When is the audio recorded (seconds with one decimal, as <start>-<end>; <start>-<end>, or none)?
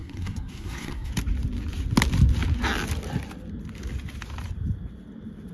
1.1-5.5